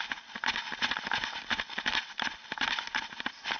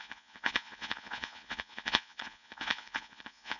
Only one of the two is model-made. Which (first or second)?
second